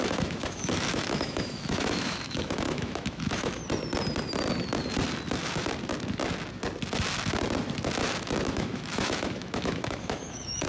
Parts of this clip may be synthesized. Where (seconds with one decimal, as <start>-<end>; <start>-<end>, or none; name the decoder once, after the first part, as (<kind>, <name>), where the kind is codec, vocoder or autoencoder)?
0.0-3.6 (autoencoder, DAC-VAE); 8.5-10.7